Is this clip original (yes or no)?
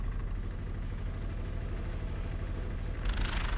yes